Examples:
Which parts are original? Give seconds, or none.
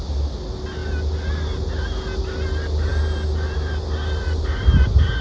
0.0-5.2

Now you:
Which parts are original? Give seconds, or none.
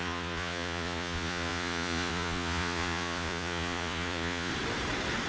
4.5-5.3